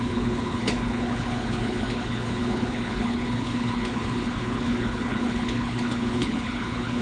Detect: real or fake fake